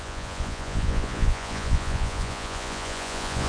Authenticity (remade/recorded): remade